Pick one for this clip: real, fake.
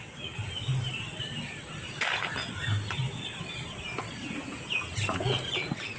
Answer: real